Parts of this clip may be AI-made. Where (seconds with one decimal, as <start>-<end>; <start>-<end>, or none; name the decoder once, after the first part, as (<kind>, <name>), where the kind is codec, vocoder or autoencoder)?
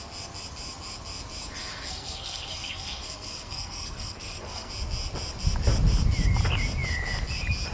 1.7-4.7 (codec, SNAC)